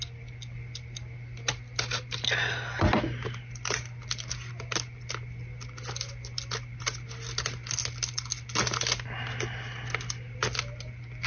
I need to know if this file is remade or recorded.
recorded